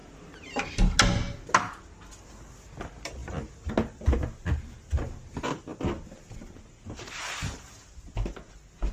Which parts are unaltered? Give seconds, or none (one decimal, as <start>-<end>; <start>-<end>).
0.0-8.9